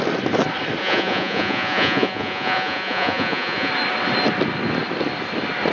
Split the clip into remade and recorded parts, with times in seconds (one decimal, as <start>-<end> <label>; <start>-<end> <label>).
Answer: 0.0-0.8 recorded; 0.8-3.7 remade; 3.7-5.7 recorded